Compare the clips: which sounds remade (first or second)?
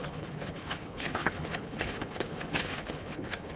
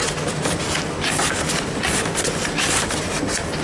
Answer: first